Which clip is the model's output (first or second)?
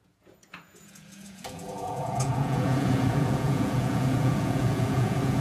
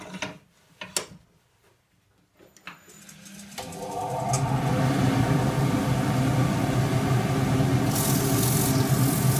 first